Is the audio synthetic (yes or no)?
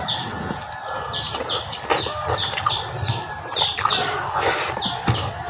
no